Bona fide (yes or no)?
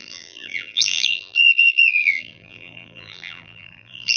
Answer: no